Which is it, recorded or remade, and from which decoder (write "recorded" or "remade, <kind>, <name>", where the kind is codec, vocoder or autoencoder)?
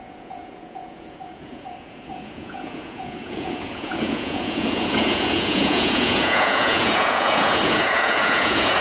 remade, vocoder, Vocos